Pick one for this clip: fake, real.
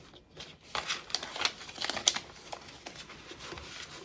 real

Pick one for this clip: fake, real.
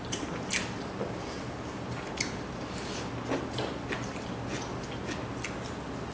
real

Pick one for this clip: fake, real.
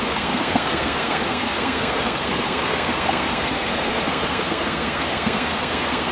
fake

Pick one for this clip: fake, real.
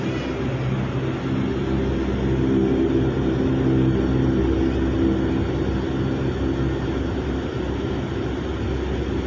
real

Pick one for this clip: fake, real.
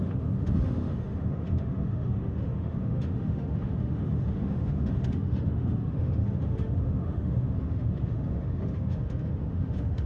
fake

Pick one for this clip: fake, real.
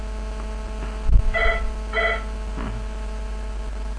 real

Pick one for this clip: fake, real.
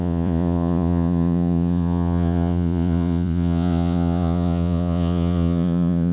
fake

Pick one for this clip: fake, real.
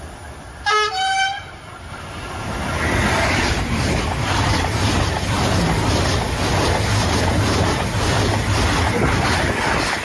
real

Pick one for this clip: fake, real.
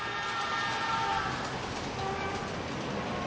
real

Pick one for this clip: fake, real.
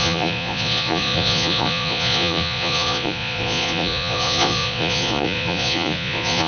fake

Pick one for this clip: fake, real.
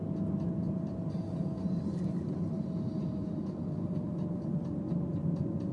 real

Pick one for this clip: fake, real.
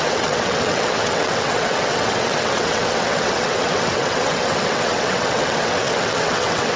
fake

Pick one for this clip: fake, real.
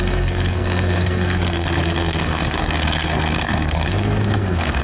fake